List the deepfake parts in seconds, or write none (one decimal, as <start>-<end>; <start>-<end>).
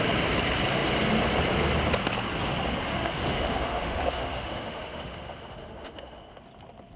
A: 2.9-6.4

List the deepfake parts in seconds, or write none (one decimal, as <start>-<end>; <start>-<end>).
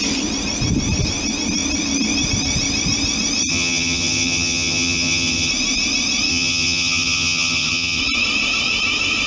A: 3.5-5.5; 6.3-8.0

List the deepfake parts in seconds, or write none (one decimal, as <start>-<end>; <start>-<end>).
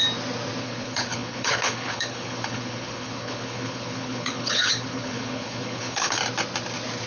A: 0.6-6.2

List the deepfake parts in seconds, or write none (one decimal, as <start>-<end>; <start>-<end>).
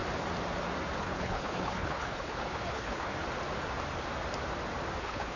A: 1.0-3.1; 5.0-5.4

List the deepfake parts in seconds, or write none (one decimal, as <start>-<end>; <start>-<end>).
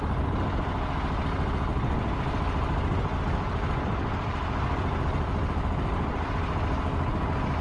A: 1.7-6.3